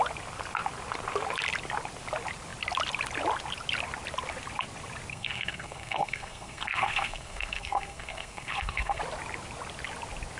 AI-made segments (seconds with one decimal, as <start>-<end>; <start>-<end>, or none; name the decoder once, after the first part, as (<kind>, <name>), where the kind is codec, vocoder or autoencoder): 5.1-9.0 (codec, SNAC)